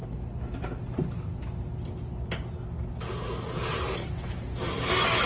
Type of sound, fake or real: real